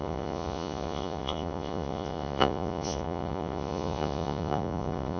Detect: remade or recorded remade